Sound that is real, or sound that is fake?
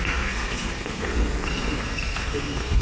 fake